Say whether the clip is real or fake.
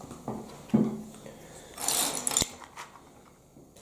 real